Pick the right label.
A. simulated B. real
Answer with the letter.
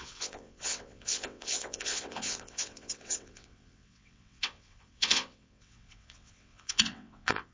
A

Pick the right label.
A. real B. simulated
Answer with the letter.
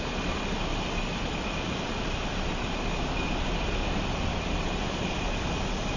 A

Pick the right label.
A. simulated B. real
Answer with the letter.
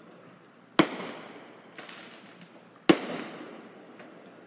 B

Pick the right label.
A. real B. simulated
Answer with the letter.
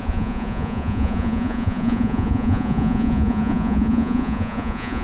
B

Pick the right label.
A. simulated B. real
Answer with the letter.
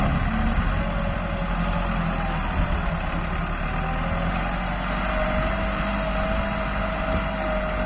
B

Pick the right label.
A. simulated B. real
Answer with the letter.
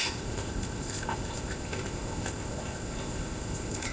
A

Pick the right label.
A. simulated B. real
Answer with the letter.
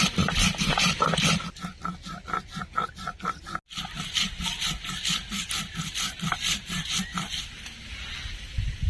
B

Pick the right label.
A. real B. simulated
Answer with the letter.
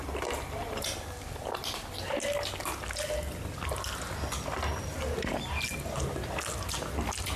A